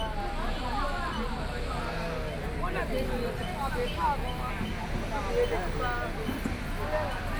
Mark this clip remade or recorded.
recorded